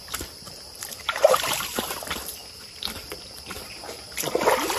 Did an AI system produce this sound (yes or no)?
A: yes